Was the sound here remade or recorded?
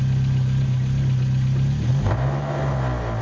recorded